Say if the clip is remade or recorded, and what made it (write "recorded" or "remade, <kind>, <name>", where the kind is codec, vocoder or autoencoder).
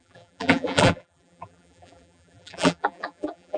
remade, vocoder, BigVGAN v2